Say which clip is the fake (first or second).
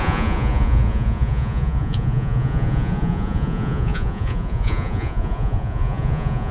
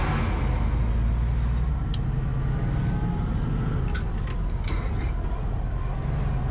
first